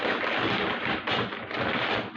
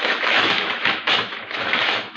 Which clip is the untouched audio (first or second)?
first